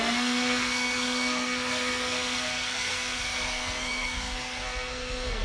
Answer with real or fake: fake